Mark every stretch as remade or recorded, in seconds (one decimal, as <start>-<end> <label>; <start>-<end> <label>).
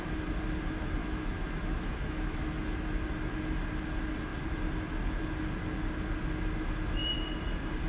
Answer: 0.0-1.0 recorded; 1.0-2.9 remade; 2.9-7.9 recorded